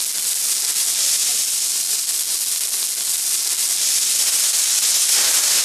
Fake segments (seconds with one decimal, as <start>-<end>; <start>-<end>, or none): none